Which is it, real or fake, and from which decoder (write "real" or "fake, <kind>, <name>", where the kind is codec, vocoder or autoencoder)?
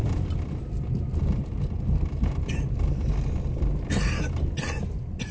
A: real